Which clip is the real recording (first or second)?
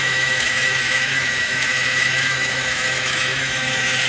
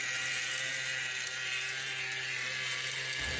second